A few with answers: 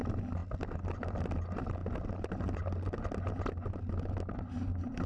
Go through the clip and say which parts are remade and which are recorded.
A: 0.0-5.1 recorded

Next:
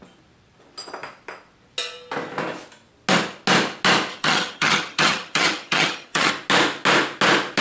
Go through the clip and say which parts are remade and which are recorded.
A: 0.0-4.1 recorded; 4.1-6.3 remade; 6.3-7.6 recorded